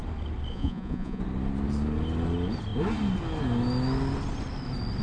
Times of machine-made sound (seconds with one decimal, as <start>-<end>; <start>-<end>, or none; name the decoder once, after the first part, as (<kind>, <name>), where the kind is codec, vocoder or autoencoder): 0.5-1.2 (vocoder, Vocos)